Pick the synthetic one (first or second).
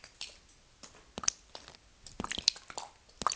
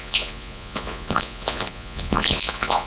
second